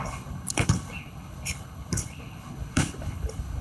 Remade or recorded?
remade